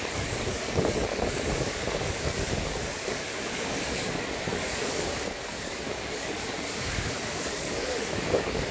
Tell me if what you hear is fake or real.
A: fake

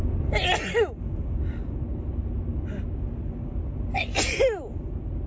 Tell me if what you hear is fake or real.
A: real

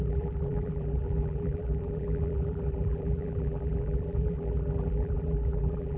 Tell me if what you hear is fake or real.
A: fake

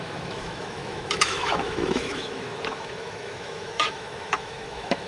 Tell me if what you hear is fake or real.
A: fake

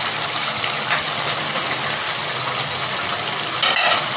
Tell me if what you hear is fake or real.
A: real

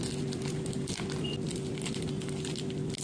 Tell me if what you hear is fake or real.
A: real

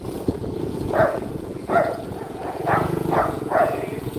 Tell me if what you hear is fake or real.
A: fake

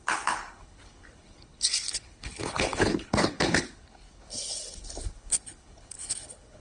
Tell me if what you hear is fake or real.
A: fake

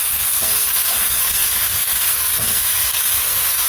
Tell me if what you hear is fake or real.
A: fake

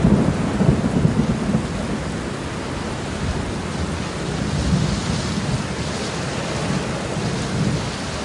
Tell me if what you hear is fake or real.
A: real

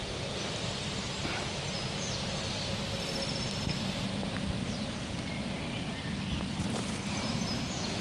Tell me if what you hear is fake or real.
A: real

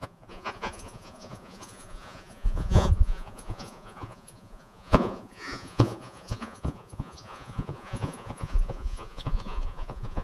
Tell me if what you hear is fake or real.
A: fake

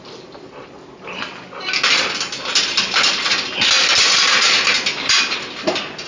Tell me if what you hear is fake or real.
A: real